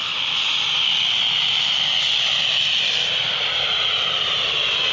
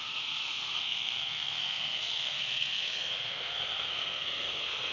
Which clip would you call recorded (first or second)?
first